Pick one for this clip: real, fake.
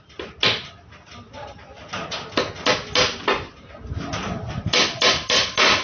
real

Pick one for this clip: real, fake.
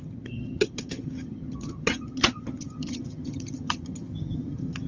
fake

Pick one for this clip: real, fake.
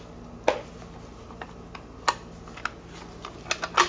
real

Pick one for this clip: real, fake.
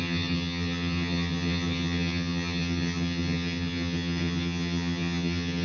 fake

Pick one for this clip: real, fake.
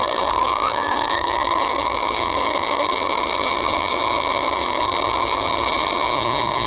fake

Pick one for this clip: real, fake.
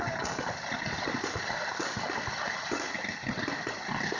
real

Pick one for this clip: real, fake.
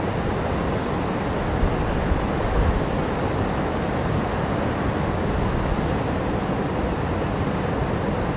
real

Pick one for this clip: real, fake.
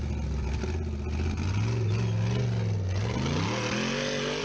real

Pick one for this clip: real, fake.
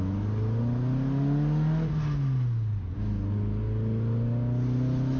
real